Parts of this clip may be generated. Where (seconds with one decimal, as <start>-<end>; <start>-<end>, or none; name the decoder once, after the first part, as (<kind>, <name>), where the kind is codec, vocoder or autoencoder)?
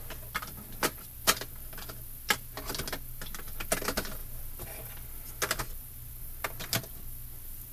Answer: none